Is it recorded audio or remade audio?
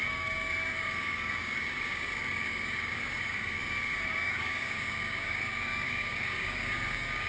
remade